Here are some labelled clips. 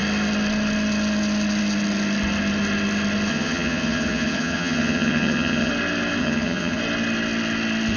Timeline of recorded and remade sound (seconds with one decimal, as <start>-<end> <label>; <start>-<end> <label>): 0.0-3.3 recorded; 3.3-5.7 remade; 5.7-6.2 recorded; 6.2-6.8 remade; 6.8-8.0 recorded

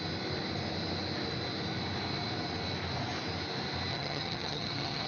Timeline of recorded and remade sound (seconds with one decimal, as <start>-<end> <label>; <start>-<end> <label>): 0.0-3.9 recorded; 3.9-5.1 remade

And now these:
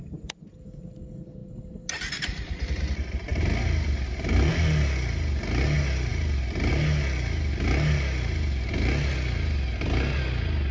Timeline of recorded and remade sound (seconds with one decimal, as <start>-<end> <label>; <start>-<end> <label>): 0.0-10.7 recorded